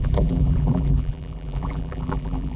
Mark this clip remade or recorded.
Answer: remade